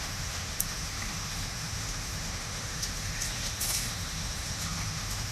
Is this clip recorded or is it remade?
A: remade